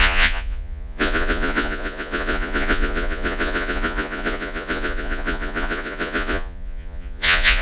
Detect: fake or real fake